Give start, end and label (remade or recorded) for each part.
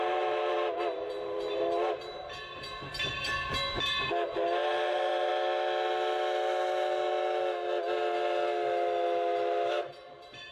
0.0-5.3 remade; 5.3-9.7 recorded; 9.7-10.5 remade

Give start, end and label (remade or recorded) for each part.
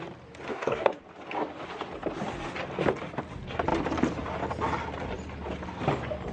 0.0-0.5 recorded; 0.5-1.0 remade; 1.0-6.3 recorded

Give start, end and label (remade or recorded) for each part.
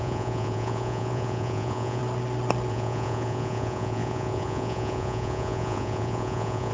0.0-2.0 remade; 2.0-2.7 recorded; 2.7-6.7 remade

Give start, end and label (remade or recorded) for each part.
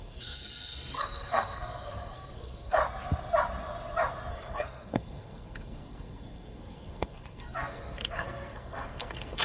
0.0-2.8 remade; 2.8-4.3 recorded; 4.3-9.4 remade